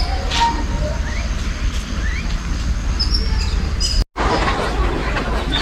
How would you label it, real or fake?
real